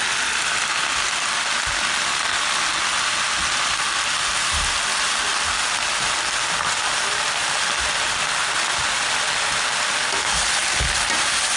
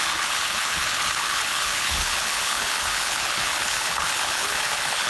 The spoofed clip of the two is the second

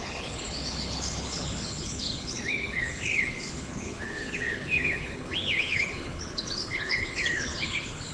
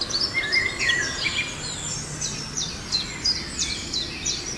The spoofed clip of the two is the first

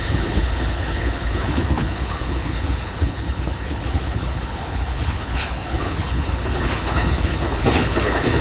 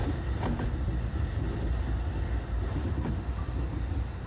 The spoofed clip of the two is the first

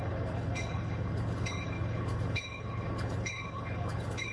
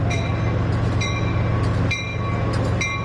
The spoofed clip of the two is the first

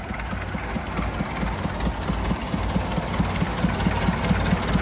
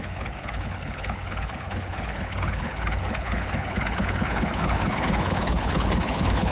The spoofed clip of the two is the second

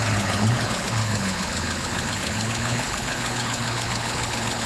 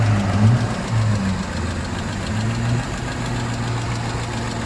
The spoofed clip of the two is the first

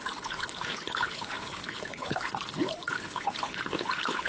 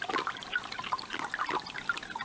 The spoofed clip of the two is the first